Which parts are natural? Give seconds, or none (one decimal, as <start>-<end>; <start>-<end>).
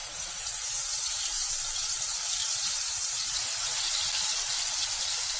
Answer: 1.5-2.4; 4.6-5.4